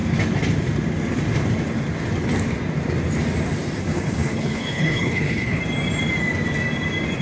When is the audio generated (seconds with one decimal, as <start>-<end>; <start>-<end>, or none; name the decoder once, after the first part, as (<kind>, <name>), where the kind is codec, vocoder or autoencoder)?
3.8-5.6 (codec, HILCodec)

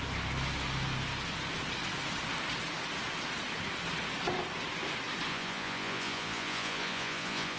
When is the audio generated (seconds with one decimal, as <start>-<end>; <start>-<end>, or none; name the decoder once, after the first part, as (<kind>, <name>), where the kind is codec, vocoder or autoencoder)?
5.3-7.6 (vocoder, Vocos)